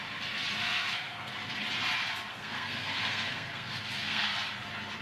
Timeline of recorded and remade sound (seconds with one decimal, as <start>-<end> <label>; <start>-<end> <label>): 0.0-0.6 recorded; 0.6-1.3 remade; 1.3-2.3 recorded; 2.3-4.3 remade; 4.3-5.0 recorded